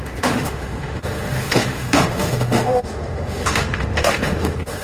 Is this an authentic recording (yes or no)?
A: no